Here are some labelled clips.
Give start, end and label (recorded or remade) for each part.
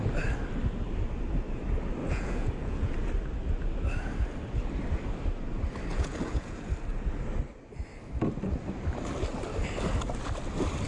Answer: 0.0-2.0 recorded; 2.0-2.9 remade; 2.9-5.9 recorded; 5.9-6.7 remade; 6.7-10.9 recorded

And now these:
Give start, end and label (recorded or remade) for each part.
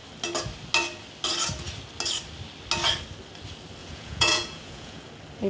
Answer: 0.0-3.8 recorded; 3.8-5.1 remade; 5.1-5.5 recorded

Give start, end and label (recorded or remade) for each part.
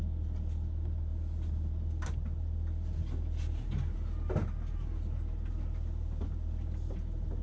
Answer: 0.0-7.4 recorded